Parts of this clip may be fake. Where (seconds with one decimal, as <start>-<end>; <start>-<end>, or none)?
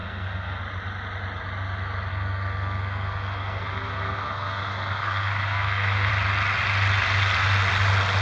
0.0-0.6; 2.1-6.1